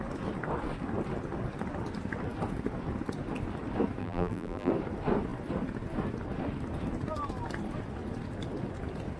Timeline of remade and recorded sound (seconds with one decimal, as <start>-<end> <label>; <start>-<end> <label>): 0.0-4.0 recorded; 4.0-4.7 remade; 4.7-9.2 recorded